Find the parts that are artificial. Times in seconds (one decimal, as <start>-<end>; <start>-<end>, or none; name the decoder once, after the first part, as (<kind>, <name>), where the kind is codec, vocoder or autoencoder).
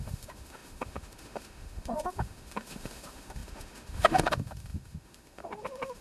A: 0.0-6.0 (autoencoder, DAC-VAE)